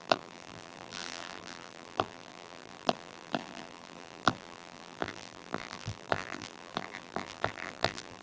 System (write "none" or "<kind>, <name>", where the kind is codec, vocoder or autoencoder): vocoder, BigVGAN v2